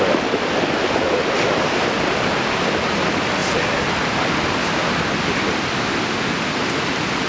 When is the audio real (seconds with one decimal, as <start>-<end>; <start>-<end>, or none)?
0.0-7.3